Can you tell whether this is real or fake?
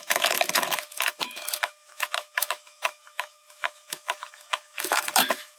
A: fake